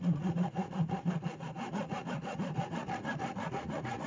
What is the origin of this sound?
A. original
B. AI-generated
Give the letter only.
B